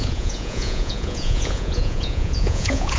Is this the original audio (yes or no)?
no